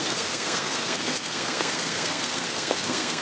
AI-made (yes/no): yes